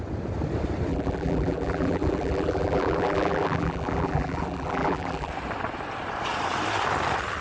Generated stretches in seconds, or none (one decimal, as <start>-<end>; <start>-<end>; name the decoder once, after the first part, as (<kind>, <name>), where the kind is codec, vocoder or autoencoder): 0.9-5.3 (vocoder, BigVGAN v2)